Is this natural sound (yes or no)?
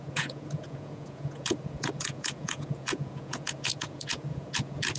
no